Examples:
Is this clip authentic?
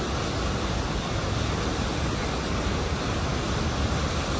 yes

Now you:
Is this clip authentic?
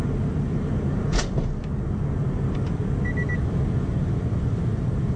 yes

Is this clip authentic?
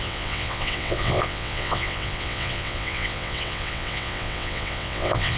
no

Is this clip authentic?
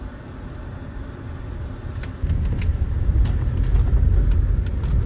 yes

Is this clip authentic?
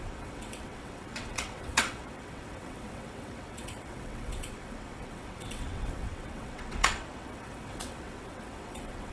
no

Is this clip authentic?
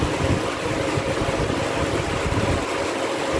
yes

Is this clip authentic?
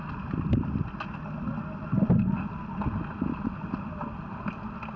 yes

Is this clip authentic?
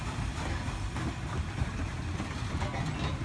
yes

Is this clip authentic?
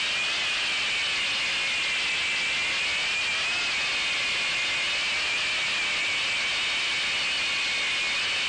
yes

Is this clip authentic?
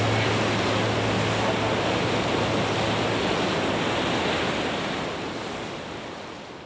yes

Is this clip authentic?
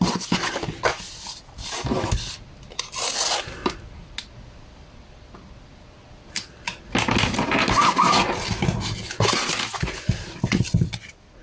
yes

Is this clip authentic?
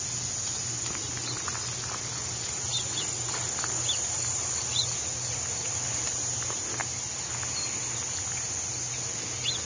yes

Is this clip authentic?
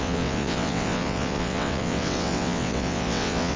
no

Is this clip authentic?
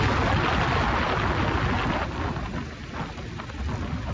yes